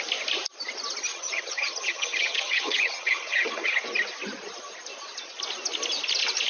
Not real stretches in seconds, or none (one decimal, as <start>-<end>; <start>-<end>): 1.1-3.8